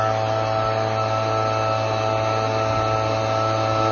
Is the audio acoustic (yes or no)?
yes